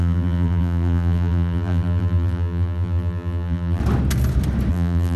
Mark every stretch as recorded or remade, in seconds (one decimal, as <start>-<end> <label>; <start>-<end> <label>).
0.0-3.8 remade; 3.8-4.7 recorded; 4.7-5.2 remade